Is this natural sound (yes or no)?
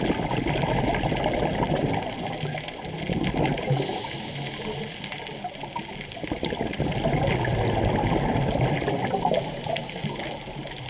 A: yes